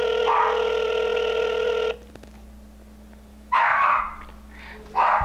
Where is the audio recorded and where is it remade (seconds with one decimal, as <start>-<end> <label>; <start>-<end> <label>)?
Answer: 0.0-3.3 recorded; 3.3-4.0 remade; 4.0-5.2 recorded